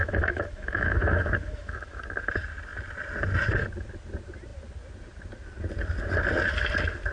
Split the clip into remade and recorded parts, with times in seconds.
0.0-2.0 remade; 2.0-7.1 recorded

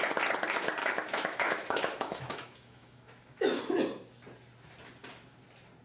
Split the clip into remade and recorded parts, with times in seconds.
0.0-0.8 recorded; 0.8-3.6 remade; 3.6-5.8 recorded